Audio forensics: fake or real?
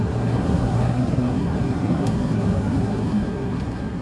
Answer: fake